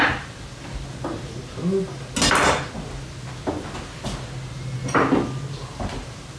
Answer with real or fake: real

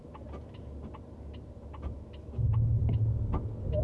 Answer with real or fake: real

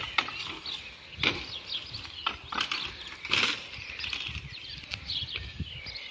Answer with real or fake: real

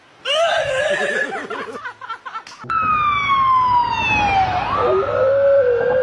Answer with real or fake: real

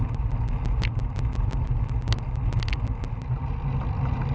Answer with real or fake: real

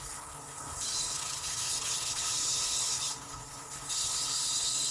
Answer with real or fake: fake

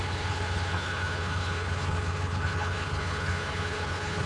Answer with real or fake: fake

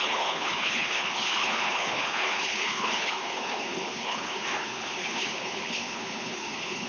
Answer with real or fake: fake